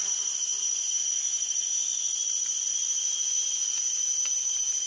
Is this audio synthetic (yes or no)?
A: no